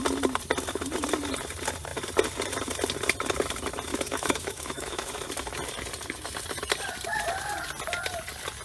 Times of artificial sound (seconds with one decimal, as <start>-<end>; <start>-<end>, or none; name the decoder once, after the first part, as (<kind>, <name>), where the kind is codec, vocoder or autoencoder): 3.9-5.1 (autoencoder, DAC-VAE)